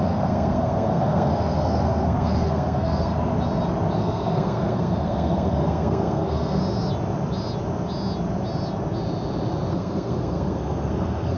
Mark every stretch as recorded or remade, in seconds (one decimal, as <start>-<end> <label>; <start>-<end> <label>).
0.0-3.1 remade; 3.1-4.0 recorded; 4.0-6.6 remade; 6.6-9.7 recorded; 9.7-11.4 remade